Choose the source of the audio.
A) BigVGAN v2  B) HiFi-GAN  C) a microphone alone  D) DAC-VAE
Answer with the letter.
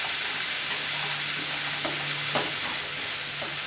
C